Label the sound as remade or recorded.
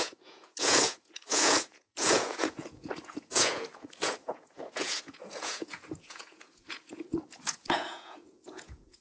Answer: remade